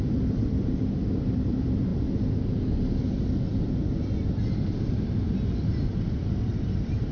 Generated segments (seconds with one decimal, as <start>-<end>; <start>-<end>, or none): 0.0-1.9; 2.9-7.1